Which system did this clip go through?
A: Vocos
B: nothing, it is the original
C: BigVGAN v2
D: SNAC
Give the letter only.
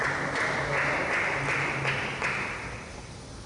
B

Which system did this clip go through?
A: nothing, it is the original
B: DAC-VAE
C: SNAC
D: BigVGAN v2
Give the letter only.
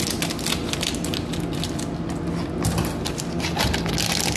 A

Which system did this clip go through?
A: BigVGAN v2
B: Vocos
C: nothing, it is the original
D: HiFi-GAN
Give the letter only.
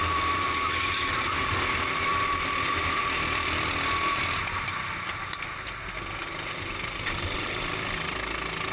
C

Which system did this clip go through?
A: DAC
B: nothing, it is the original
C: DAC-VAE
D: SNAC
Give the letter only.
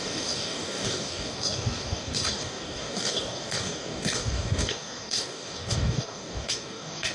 A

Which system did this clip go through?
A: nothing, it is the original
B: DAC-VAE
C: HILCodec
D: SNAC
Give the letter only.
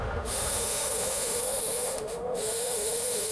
B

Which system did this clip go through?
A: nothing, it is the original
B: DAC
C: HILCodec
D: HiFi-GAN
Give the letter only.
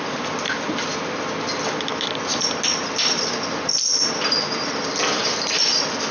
A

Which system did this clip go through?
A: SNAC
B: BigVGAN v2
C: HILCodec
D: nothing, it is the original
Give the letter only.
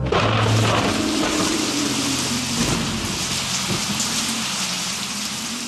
D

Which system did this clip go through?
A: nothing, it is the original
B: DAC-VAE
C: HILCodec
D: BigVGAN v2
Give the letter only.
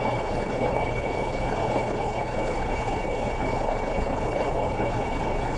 C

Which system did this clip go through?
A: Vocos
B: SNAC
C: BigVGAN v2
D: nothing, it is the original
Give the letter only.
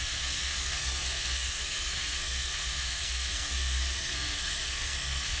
B